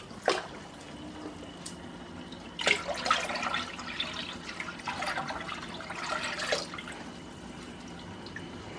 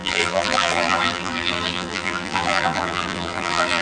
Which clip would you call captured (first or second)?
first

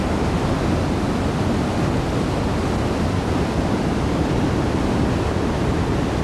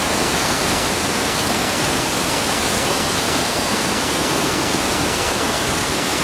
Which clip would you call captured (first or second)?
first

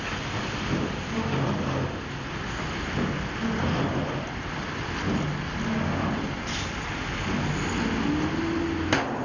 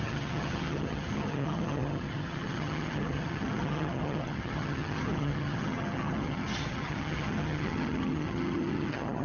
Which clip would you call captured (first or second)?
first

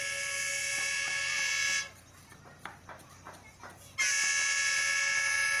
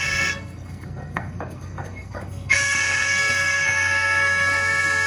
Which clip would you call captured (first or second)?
first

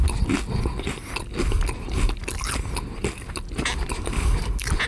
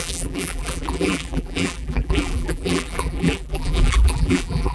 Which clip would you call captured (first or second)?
first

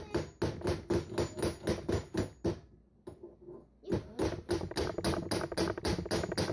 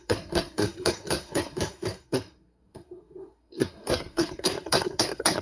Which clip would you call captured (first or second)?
first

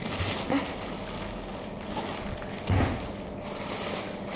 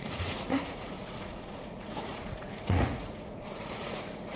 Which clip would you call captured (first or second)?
first